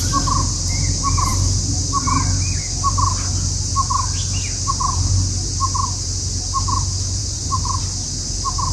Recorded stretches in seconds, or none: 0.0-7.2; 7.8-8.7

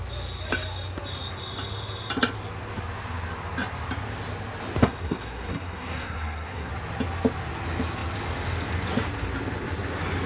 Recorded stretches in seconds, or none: 0.0-4.8; 6.7-10.3